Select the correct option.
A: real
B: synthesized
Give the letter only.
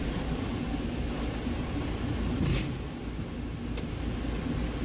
A